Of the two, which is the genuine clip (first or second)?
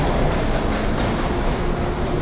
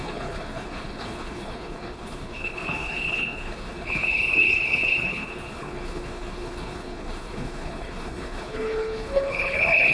first